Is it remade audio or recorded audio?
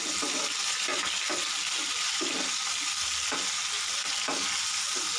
recorded